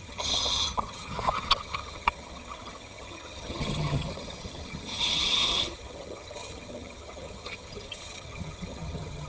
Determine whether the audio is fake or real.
fake